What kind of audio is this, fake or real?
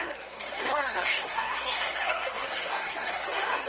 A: fake